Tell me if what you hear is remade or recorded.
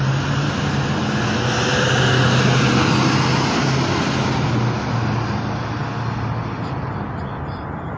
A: recorded